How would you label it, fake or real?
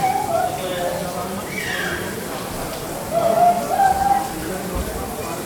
real